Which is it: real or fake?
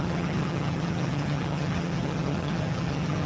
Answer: fake